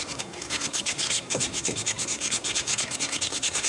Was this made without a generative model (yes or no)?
no